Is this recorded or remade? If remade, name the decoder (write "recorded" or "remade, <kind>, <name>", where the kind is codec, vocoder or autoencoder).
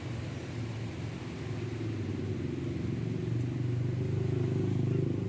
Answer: recorded